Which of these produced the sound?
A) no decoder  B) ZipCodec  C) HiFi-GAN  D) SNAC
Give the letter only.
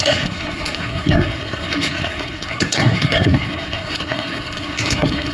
D